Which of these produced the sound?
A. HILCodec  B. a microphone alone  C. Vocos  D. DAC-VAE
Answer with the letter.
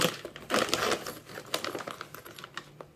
B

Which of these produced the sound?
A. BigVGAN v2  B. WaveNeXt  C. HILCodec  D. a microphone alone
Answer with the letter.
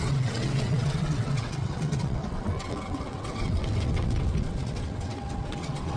B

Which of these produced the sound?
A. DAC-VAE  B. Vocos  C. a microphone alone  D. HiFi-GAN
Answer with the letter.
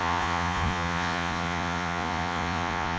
B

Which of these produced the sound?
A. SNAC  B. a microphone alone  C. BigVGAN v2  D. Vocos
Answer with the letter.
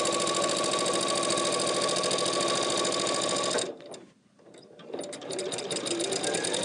B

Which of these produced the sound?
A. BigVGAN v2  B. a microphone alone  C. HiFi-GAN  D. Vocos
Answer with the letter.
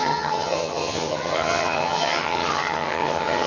C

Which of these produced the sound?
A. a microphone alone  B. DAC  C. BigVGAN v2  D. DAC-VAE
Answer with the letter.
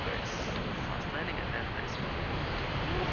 A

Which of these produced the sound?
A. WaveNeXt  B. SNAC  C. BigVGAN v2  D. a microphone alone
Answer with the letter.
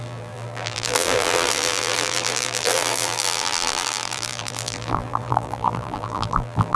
C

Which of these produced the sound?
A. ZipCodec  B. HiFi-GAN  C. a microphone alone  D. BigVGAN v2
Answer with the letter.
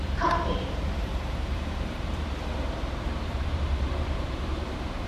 D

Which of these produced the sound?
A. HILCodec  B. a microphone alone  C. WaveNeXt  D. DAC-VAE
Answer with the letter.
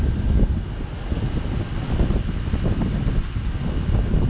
B